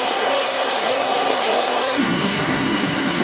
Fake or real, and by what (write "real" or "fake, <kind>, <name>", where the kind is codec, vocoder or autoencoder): fake, codec, SNAC